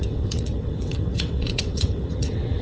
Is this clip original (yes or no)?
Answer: no